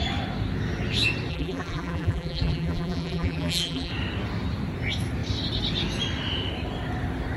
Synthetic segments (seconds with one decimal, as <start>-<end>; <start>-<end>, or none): 1.3-3.9